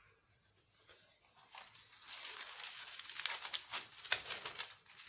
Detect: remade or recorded recorded